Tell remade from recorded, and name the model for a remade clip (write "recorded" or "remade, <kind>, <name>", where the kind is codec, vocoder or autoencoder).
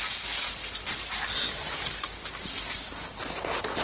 recorded